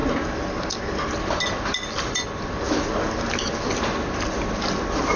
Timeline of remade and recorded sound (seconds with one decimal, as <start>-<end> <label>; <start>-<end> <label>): 0.0-5.2 recorded